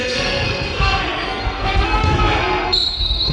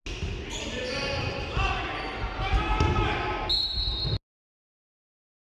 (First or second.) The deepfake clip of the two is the first